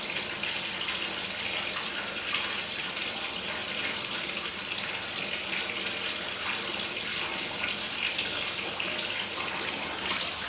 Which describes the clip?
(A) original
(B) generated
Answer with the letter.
A